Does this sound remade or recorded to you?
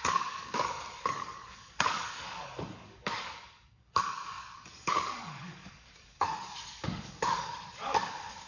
remade